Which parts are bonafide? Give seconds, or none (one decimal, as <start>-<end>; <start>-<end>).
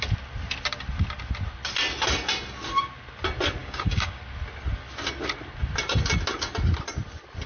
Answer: 0.0-3.6; 4.2-7.5